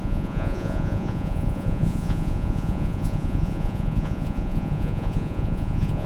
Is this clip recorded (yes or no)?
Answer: no